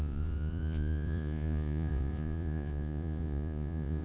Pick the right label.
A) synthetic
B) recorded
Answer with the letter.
A